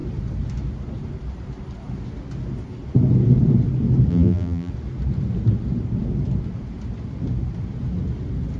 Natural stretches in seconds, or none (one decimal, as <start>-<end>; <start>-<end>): 0.0-4.1; 4.7-8.6